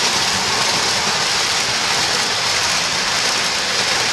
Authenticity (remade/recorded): recorded